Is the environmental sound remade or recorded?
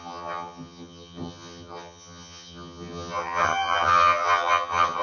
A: remade